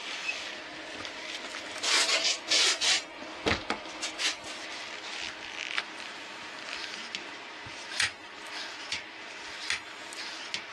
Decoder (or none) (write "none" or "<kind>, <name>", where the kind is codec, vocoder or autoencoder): none